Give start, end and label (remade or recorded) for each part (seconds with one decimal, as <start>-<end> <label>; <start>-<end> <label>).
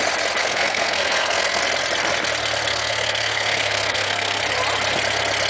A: 0.0-0.4 recorded; 0.4-1.6 remade; 1.6-2.7 recorded; 2.7-4.4 remade; 4.4-5.5 recorded